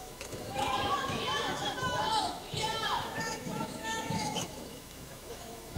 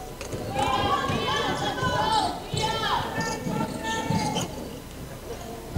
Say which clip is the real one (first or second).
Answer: second